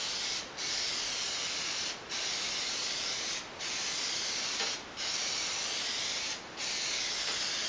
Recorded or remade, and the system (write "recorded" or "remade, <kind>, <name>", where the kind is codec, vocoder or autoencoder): recorded